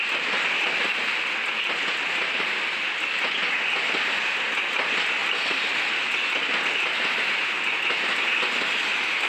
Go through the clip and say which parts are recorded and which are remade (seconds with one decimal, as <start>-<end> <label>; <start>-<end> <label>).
0.0-9.3 recorded